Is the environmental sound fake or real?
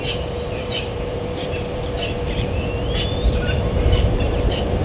fake